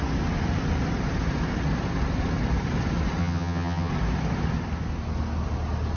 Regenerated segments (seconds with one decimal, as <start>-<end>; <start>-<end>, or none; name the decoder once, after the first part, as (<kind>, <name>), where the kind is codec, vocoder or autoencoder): 3.2-3.9 (vocoder, HiFi-GAN)